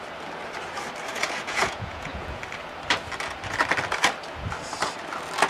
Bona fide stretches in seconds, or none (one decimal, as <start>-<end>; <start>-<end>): 0.0-1.1; 2.4-5.5